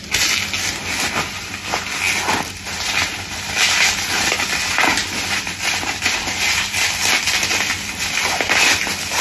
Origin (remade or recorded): recorded